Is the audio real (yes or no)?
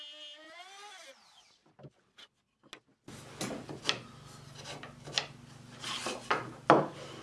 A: yes